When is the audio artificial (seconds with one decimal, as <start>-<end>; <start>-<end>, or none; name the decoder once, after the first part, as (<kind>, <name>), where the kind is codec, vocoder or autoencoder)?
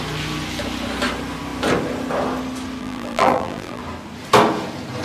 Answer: 2.8-3.8 (vocoder, BigVGAN v2)